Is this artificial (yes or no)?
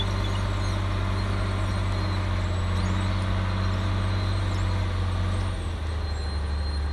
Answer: no